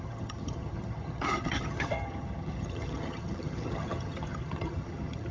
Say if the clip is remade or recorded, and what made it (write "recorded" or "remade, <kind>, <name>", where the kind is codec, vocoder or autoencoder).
remade, vocoder, HiFi-GAN